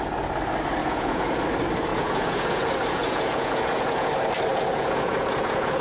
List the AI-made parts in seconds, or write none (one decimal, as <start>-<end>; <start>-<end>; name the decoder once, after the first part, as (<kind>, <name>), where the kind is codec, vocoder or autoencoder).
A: 0.8-1.4 (vocoder, Vocos); 1.9-4.1; 4.5-5.8